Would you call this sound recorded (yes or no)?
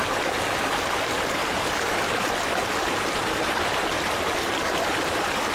yes